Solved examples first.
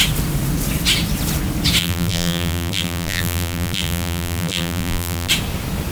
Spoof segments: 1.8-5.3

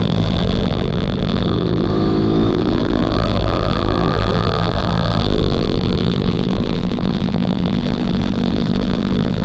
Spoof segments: 0.0-1.9; 2.5-9.4

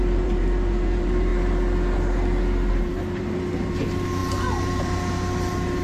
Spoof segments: 0.0-1.3; 2.7-5.8

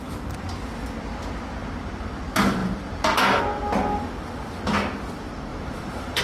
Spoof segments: 1.6-2.2; 2.6-3.4; 5.5-6.2

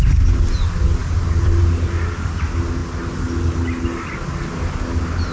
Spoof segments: 1.0-1.6

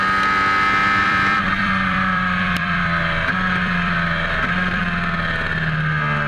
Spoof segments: 1.0-4.8

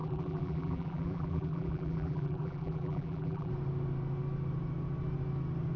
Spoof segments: 0.0-3.5